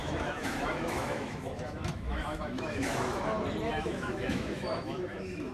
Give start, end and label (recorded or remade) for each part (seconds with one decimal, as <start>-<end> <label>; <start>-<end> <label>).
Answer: 0.0-3.2 remade; 3.2-3.7 recorded; 3.7-5.5 remade